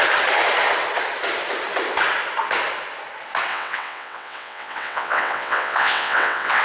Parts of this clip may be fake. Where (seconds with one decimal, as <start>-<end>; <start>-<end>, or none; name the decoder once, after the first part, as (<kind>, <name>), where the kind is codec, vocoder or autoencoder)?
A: 3.5-6.6 (vocoder, WaveNeXt)